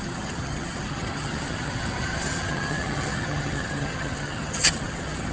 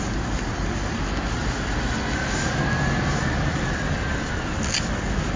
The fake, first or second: first